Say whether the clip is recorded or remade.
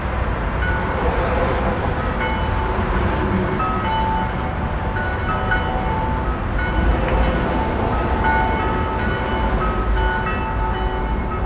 recorded